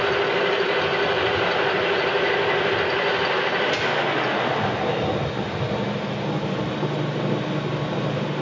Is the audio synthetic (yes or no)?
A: no